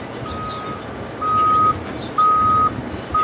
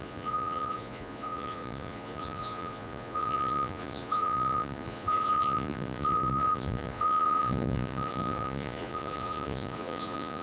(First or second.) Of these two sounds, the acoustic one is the first